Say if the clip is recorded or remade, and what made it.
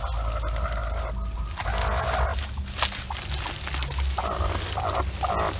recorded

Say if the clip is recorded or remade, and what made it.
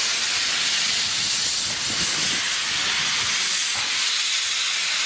recorded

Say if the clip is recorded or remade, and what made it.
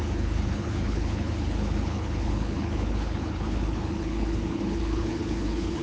remade, codec, HILCodec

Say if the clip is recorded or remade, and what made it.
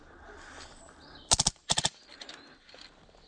recorded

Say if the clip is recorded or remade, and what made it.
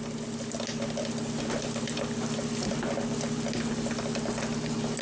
recorded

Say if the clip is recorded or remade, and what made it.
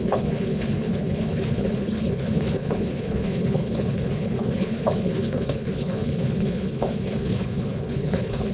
remade, codec, HILCodec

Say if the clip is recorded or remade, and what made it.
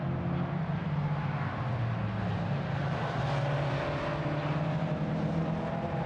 recorded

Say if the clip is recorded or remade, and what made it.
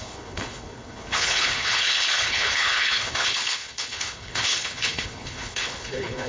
remade, codec, HILCodec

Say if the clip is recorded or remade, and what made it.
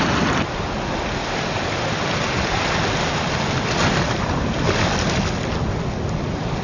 recorded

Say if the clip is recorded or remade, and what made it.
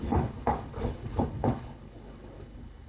remade, codec, HILCodec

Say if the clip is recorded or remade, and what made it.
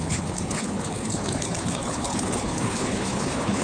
remade, codec, HILCodec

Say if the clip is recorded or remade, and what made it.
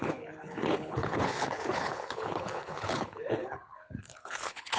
remade, codec, HILCodec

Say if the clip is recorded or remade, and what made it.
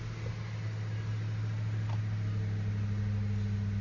recorded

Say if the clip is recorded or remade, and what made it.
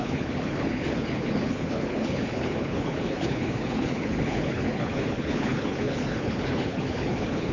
remade, codec, HILCodec